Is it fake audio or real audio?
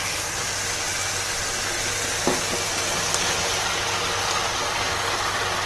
real